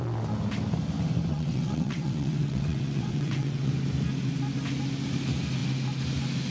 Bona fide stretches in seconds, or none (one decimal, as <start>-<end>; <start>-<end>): 0.0-1.3; 3.7-6.5